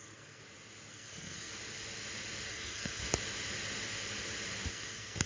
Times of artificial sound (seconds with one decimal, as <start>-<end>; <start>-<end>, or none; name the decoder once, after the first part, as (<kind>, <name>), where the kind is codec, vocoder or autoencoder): 0.0-0.4 (codec, SNAC); 0.9-1.5; 2.5-3.0; 4.7-5.3